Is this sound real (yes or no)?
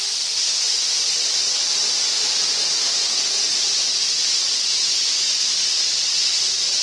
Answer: yes